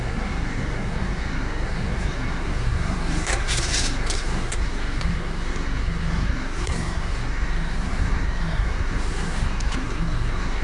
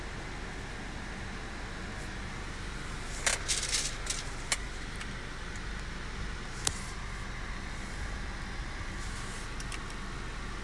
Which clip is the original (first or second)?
second